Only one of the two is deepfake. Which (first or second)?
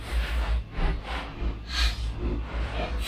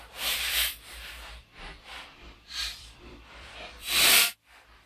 second